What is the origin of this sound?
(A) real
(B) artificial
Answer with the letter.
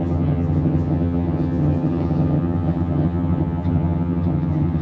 B